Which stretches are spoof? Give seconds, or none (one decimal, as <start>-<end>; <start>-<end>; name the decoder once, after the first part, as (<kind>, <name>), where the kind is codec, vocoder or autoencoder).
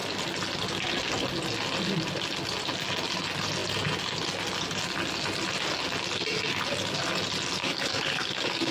7.6-8.7 (codec, DAC)